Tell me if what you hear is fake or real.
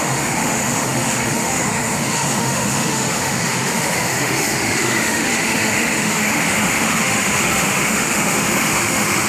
fake